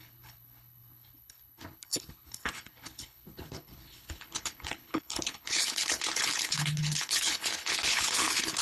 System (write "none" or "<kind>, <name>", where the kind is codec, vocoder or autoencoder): codec, HILCodec